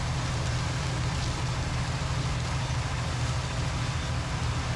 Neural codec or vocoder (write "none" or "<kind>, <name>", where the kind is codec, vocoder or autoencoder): none